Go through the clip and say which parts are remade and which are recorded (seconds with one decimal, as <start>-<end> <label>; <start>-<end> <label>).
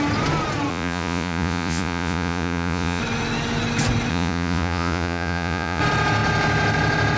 0.0-0.7 recorded; 0.7-3.0 remade; 3.0-4.1 recorded; 4.1-5.8 remade; 5.8-7.2 recorded